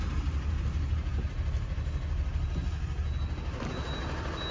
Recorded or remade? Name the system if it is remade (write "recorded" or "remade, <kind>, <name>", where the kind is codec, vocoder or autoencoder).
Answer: recorded